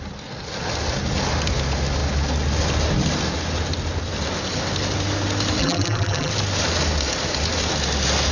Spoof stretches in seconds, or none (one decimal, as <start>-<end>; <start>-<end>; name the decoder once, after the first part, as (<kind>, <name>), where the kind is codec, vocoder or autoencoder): 5.6-6.3 (vocoder, BigVGAN v2)